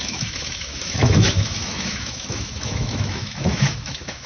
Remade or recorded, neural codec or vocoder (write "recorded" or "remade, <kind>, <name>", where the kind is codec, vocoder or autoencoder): remade, autoencoder, DAC-VAE